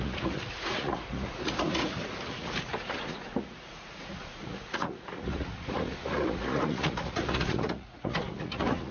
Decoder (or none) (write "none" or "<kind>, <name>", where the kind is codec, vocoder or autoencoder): vocoder, Vocos